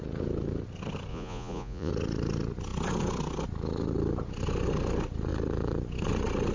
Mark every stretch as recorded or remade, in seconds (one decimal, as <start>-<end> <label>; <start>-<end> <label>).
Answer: 0.0-1.1 recorded; 1.1-1.9 remade; 1.9-6.5 recorded